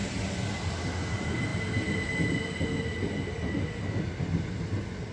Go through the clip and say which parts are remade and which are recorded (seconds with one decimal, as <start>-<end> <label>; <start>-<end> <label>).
0.0-5.1 recorded